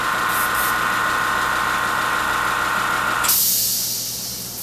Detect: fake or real real